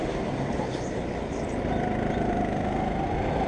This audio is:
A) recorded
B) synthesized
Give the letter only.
A